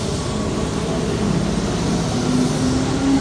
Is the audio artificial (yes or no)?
no